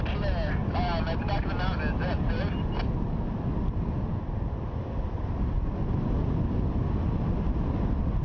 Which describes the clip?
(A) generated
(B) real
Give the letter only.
B